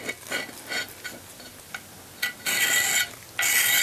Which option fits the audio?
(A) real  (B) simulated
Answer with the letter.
A